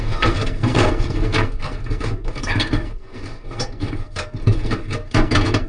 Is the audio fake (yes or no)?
yes